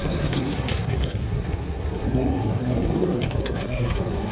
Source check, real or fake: fake